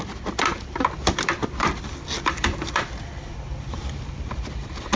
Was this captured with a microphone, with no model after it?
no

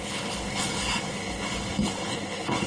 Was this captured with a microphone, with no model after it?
no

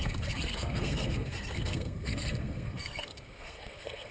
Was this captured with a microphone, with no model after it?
no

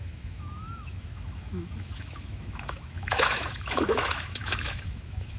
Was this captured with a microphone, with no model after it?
no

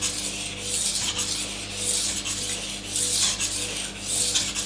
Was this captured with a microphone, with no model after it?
yes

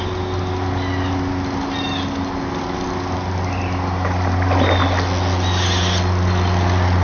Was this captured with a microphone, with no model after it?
yes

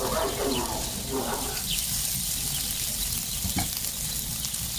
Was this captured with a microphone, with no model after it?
yes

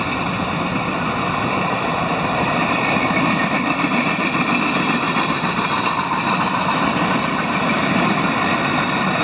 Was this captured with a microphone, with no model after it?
no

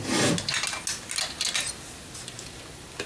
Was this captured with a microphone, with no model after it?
yes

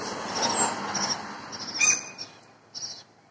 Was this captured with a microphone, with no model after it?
yes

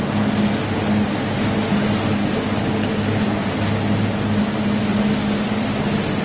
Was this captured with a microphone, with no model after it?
yes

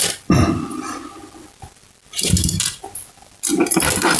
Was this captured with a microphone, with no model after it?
yes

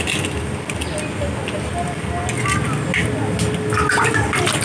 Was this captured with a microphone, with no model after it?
yes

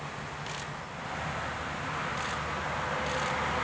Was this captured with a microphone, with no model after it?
yes